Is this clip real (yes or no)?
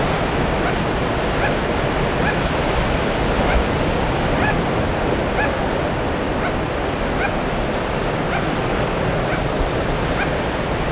yes